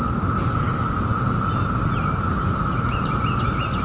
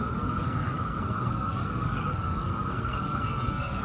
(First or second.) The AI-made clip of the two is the second